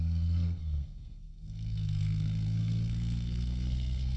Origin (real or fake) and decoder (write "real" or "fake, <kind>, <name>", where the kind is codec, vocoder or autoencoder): fake, codec, SNAC